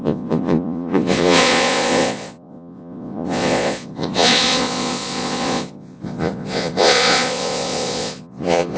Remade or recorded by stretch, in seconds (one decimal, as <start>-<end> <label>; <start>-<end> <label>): 0.0-8.8 remade